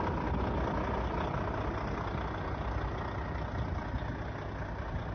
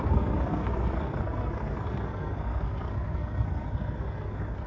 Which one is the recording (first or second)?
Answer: first